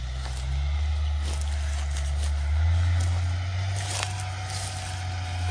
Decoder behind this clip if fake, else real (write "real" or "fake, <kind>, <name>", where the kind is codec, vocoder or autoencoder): real